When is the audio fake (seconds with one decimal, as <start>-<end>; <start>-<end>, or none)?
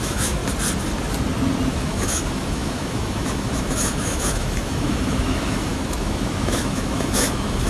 0.0-0.4; 1.7-7.7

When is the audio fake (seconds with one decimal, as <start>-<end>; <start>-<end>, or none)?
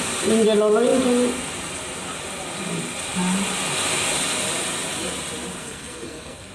5.6-6.5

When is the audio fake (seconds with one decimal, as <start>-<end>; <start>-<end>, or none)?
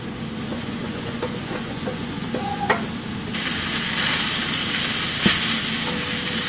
0.5-2.7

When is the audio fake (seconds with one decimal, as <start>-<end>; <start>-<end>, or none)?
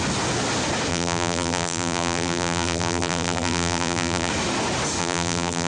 0.9-4.3; 5.0-5.7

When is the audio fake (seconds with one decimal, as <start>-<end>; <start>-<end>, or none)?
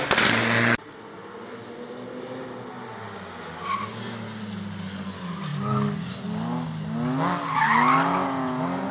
none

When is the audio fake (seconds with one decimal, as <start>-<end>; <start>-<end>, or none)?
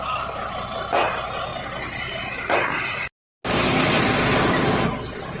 none